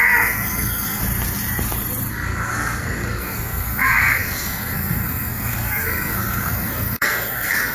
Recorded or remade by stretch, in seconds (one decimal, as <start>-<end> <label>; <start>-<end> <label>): 0.0-1.0 remade; 1.0-2.1 recorded; 2.1-7.7 remade